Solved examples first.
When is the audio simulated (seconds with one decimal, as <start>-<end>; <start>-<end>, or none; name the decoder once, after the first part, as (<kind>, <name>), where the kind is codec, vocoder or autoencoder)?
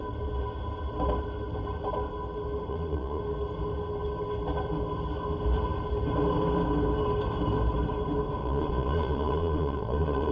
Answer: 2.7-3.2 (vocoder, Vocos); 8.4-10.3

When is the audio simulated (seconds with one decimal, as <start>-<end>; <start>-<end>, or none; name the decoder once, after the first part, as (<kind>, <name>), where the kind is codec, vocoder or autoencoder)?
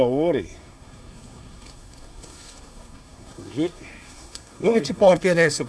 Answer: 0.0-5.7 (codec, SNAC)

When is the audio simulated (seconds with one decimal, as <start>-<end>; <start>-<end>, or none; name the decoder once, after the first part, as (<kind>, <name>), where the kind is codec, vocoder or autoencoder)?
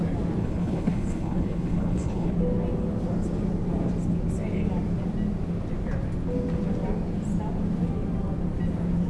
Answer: 0.4-2.3 (codec, HILCodec)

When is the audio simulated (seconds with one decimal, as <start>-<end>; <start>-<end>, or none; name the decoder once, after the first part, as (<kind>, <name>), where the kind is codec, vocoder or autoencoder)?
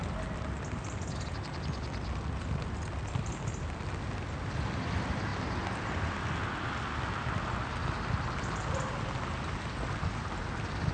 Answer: none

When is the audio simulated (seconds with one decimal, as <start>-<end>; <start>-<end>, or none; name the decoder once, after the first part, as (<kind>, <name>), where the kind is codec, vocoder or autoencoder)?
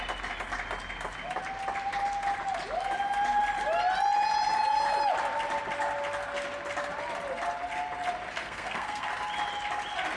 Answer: 8.4-9.1 (codec, SNAC)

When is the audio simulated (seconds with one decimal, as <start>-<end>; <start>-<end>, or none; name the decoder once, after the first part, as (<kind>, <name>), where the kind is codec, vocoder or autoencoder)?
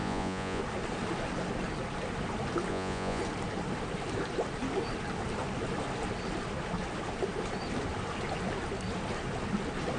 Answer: 0.0-0.6 (vocoder, Vocos); 2.7-3.2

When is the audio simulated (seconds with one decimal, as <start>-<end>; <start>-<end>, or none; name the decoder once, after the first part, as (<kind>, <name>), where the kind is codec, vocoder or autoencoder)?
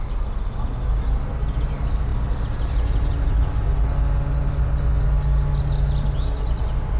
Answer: none